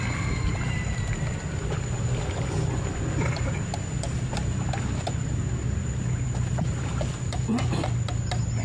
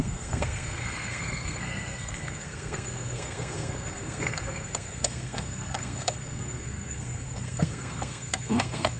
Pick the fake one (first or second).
second